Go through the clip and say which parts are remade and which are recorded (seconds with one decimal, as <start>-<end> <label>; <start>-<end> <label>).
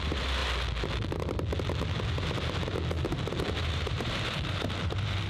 0.0-0.4 remade; 0.4-3.6 recorded; 3.6-5.3 remade